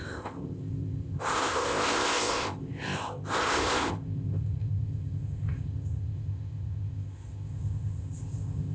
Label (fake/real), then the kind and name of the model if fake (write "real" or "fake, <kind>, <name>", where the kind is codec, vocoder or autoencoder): fake, codec, ZipCodec